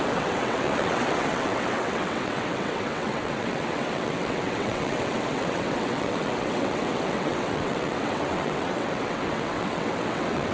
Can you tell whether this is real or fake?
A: fake